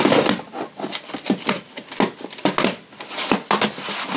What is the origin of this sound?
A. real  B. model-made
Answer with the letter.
A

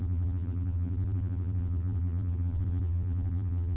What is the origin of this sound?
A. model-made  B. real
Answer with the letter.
A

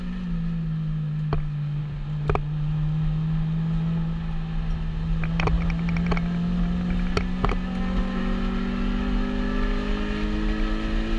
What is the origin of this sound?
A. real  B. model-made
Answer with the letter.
A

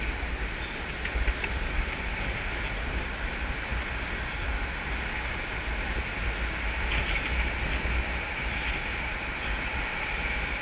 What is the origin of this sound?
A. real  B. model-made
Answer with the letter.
A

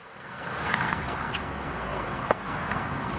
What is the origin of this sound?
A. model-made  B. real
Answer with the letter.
A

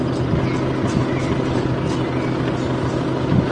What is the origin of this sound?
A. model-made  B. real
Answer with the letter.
B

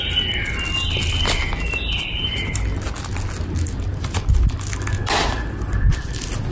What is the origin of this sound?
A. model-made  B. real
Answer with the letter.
B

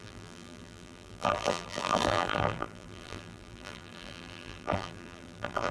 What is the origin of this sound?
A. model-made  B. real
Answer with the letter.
A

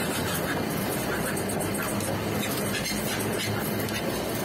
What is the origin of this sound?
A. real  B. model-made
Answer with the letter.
A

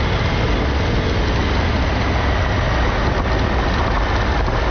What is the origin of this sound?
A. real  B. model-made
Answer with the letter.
A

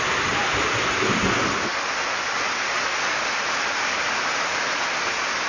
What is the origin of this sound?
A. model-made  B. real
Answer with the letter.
B